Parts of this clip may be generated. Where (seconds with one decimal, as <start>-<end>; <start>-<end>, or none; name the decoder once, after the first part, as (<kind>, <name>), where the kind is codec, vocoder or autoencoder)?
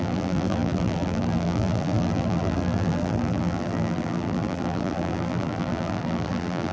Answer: 0.0-6.7 (vocoder, BigVGAN v2)